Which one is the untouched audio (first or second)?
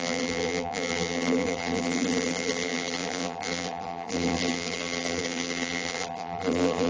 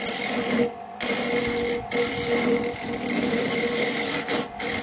second